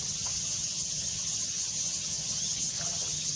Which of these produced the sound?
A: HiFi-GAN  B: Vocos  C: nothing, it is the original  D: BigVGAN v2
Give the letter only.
A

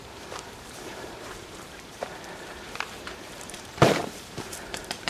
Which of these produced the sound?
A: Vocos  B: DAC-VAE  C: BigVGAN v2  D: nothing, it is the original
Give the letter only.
C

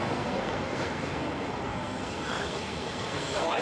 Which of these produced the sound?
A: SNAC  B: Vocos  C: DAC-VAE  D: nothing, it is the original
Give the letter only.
A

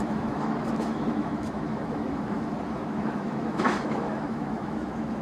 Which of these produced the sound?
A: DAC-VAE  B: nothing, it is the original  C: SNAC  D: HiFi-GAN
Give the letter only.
A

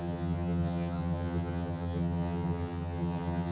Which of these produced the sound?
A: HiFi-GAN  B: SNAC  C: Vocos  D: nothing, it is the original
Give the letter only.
A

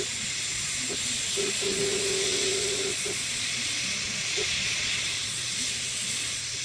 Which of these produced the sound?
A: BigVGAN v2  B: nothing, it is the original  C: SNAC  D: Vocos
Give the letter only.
D